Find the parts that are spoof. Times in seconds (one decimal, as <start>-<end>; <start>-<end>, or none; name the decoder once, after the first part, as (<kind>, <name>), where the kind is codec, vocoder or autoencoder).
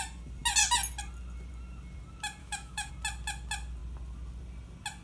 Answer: 2.4-2.9 (autoencoder, DAC-VAE)